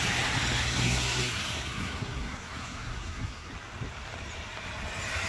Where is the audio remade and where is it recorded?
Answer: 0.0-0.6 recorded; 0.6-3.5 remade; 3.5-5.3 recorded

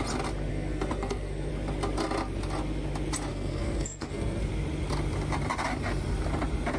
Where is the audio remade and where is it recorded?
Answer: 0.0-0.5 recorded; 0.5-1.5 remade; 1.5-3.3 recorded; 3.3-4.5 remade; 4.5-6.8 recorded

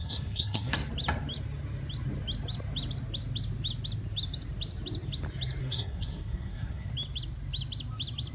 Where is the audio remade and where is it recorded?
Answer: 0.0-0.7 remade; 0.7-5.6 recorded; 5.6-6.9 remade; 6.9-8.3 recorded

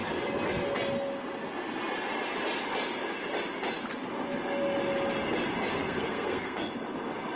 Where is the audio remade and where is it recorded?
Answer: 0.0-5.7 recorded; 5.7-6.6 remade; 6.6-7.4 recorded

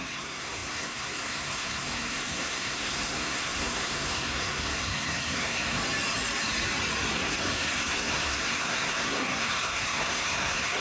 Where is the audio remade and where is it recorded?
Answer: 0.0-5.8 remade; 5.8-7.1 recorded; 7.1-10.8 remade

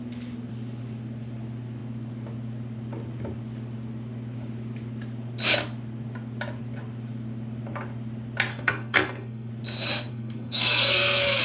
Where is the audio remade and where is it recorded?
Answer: 0.0-8.5 recorded; 8.5-9.5 remade; 9.5-10.1 recorded; 10.1-11.4 remade

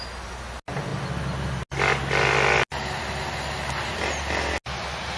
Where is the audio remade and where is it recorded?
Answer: 0.0-5.2 recorded

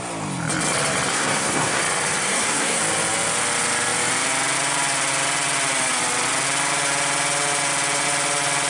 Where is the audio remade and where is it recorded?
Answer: 0.0-1.1 recorded; 1.1-1.8 remade; 1.8-2.2 recorded; 2.2-2.8 remade; 2.8-8.7 recorded